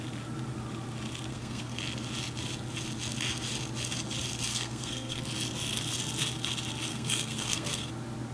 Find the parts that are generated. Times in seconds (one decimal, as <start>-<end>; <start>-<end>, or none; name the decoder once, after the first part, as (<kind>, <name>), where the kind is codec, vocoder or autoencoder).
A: 1.3-1.8 (codec, SNAC); 4.5-5.2; 6.9-7.9